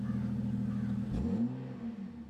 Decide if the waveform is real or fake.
real